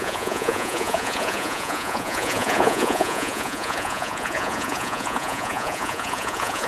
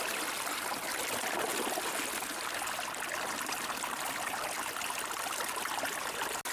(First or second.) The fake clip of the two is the first